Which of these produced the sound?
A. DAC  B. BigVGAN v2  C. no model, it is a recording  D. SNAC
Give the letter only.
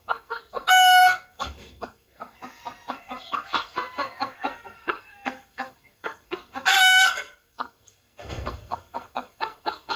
D